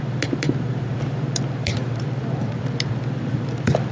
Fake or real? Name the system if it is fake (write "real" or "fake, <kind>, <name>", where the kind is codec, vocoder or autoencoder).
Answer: fake, vocoder, BigVGAN v2